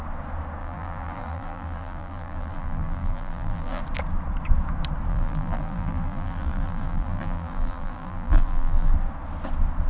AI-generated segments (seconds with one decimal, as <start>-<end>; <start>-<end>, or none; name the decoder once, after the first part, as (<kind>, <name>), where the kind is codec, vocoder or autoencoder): 0.6-3.8 (vocoder, BigVGAN v2); 5.1-8.9